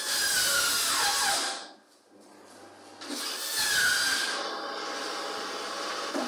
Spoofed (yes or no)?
no